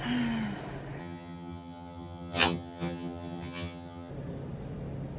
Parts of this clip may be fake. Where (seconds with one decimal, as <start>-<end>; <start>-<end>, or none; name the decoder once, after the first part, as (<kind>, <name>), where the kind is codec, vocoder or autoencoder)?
1.0-4.1 (vocoder, HiFi-GAN)